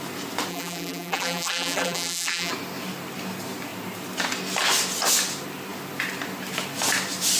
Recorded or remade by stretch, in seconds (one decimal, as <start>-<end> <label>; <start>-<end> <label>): 0.0-0.5 recorded; 0.5-2.5 remade; 2.5-7.4 recorded